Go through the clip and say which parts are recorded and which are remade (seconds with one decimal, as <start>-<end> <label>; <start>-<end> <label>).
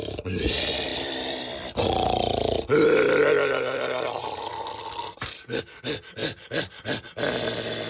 0.0-0.9 recorded; 0.9-5.6 remade; 5.6-6.2 recorded; 6.2-6.8 remade; 6.8-7.9 recorded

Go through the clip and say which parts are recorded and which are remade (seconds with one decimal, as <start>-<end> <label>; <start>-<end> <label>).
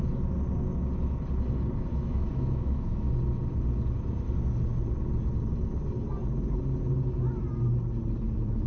0.0-1.9 recorded; 1.9-3.1 remade; 3.1-8.7 recorded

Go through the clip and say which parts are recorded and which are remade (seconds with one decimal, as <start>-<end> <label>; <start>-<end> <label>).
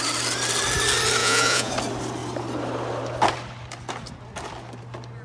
0.0-1.2 recorded; 1.2-1.7 remade; 1.7-5.2 recorded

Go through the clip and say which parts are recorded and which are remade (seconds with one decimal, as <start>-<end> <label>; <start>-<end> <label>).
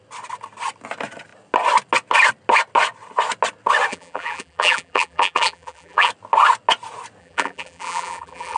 0.0-3.9 recorded; 3.9-6.1 remade; 6.1-7.2 recorded; 7.2-8.6 remade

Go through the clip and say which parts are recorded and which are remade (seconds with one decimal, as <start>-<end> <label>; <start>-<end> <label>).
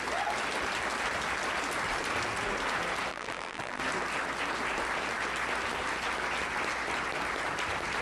0.0-3.1 recorded; 3.1-3.8 remade; 3.8-8.0 recorded